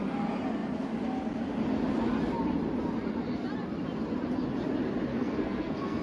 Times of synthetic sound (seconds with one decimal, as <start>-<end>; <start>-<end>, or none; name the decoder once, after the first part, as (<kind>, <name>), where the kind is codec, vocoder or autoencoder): 5.1-6.0 (codec, SNAC)